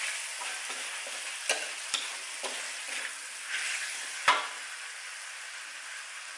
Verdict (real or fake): real